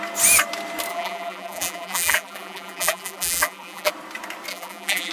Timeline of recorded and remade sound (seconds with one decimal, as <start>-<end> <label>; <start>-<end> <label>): 0.0-0.9 recorded; 0.9-3.9 remade; 3.9-4.5 recorded; 4.5-5.1 remade